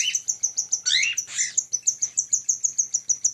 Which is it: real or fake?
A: real